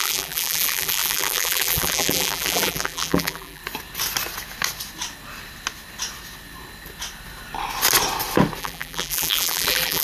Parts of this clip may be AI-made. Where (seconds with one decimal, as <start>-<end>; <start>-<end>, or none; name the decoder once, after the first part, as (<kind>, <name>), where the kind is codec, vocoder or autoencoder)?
0.0-3.6 (vocoder, BigVGAN v2); 8.6-10.0